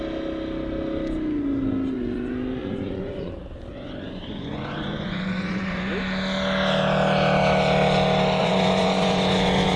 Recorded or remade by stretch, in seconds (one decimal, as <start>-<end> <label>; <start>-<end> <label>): 0.0-2.6 recorded; 2.6-3.3 remade; 3.3-3.7 recorded; 3.7-5.9 remade; 5.9-8.4 recorded; 8.4-9.8 remade